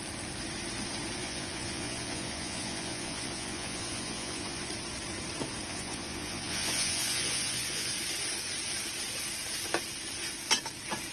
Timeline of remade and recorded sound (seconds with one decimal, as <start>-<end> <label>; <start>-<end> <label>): 0.0-1.2 recorded; 1.2-4.7 remade; 4.7-5.7 recorded; 5.7-7.9 remade; 7.9-11.1 recorded